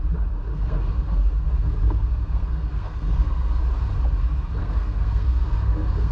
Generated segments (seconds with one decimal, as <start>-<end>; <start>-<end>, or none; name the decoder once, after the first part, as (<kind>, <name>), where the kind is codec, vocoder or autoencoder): 0.5-3.6 (codec, SNAC); 4.6-6.1